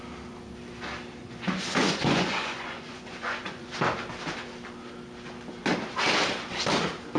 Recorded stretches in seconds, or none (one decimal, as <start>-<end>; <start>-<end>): 0.0-1.2; 3.7-7.2